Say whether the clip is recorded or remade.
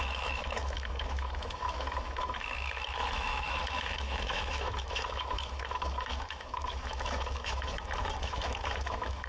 remade